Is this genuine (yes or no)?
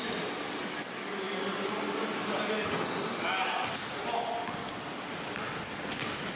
yes